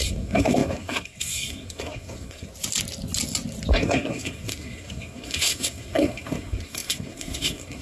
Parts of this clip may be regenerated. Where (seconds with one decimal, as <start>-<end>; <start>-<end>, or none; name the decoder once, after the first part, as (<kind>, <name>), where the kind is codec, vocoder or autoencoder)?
0.0-2.5 (codec, SNAC); 3.7-7.8